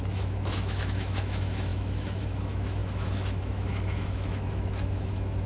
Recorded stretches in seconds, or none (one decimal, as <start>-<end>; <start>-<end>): none